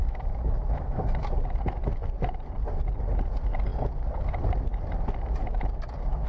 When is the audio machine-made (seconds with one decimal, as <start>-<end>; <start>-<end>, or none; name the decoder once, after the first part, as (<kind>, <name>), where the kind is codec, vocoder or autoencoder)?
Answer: 0.0-1.2 (autoencoder, DAC-VAE)